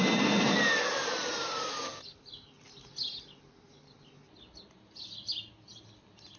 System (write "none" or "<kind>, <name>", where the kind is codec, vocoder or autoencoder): none